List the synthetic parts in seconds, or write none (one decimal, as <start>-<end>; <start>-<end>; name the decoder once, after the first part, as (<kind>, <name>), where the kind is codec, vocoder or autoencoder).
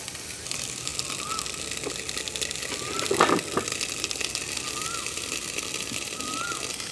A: 0.0-0.9 (vocoder, BigVGAN v2); 4.7-6.9